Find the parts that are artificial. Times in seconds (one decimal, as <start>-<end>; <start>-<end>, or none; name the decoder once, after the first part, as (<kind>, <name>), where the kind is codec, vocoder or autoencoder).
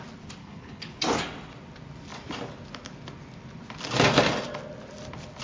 0.4-1.0 (codec, HILCodec)